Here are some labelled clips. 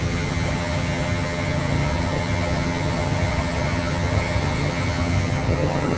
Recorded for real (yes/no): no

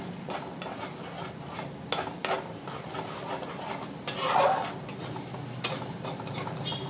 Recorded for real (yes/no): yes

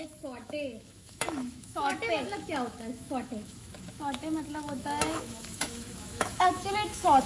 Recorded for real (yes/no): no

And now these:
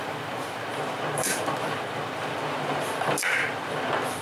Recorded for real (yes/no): yes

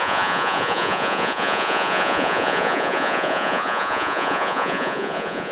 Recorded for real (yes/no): no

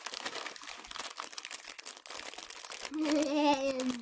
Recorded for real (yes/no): yes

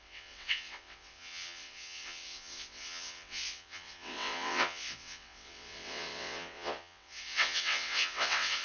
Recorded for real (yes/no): no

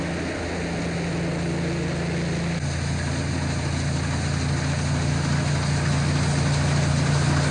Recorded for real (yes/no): yes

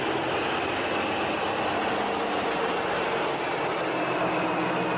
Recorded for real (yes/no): yes